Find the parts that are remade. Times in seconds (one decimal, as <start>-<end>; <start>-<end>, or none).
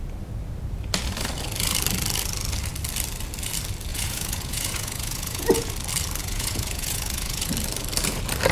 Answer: 3.9-5.7; 6.2-7.5